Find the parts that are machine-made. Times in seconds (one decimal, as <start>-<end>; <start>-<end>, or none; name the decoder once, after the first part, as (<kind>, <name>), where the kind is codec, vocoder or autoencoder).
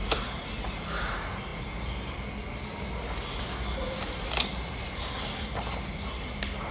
none